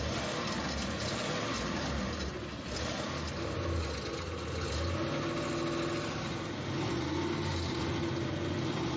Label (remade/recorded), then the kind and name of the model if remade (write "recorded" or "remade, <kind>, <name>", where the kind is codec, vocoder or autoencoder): recorded